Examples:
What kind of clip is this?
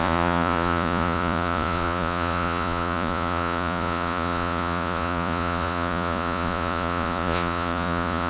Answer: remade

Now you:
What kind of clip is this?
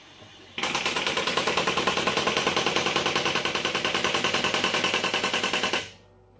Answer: recorded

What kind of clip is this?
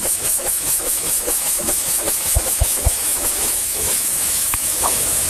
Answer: remade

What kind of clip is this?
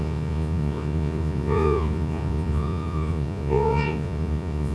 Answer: remade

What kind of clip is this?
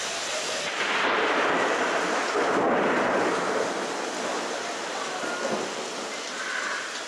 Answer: recorded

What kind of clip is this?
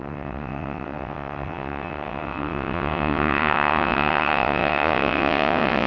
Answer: remade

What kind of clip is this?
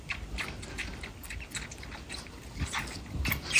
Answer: recorded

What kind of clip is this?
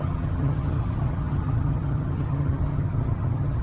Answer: remade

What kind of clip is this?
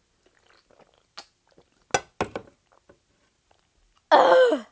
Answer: recorded